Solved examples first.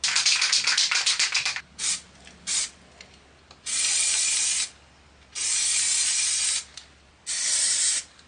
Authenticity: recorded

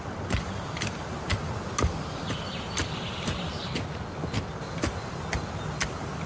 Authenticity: recorded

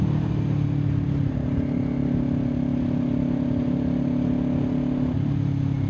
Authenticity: recorded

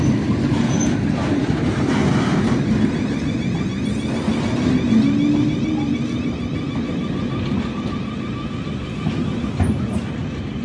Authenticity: recorded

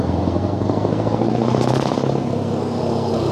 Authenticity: remade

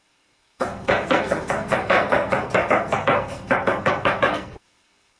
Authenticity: remade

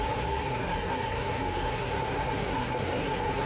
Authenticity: remade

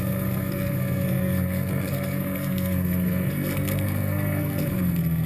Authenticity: remade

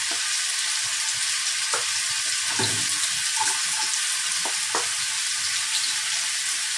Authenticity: recorded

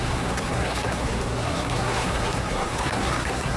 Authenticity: remade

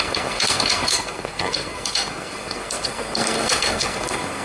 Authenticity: remade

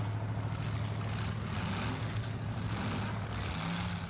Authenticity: recorded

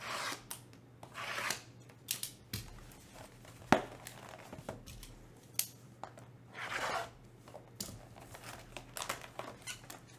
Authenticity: recorded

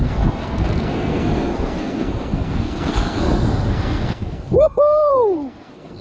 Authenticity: remade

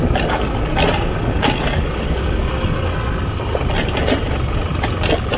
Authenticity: recorded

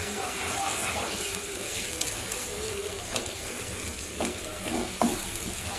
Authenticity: remade